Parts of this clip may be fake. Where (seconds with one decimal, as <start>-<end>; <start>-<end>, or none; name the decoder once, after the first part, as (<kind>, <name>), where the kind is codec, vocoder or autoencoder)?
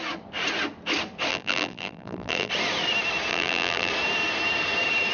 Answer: 1.3-2.5 (vocoder, BigVGAN v2); 3.3-3.9